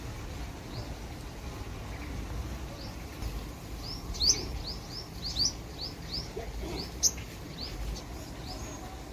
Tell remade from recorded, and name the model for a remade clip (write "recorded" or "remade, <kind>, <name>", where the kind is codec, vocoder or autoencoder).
recorded